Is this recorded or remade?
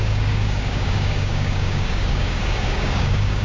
remade